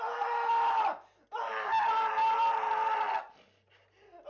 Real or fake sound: real